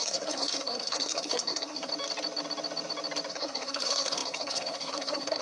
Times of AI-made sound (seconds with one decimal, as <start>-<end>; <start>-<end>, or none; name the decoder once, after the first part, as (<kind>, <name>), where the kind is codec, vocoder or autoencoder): 0.0-1.9 (codec, SNAC); 3.3-5.4